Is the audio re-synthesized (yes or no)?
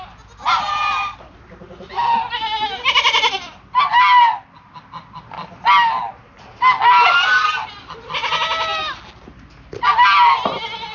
no